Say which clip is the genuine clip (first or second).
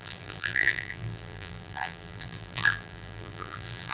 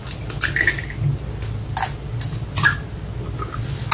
second